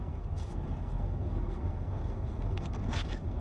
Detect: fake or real fake